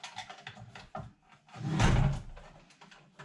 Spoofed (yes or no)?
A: no